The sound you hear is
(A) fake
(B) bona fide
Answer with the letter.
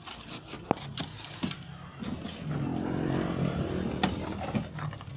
B